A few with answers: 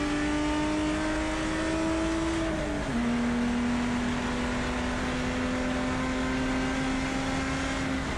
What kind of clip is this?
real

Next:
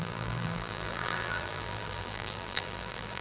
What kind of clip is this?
fake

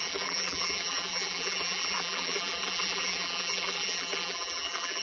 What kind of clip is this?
fake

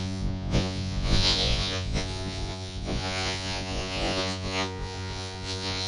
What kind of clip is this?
fake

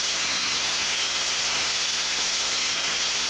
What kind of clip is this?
fake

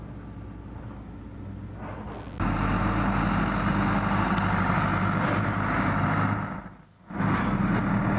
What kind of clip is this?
real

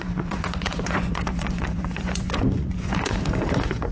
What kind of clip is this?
fake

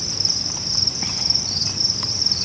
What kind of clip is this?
fake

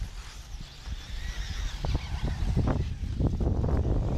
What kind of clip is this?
real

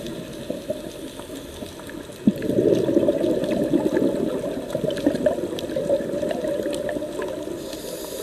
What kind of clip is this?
real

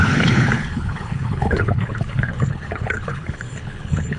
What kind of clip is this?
fake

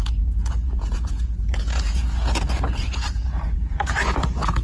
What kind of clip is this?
fake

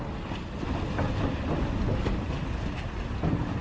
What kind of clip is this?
real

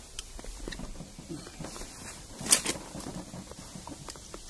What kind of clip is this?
real